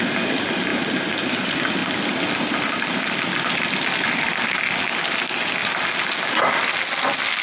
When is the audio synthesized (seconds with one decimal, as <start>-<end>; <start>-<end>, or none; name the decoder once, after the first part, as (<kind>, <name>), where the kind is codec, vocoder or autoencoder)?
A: none